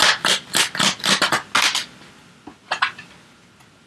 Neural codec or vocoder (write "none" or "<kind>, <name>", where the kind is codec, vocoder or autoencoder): none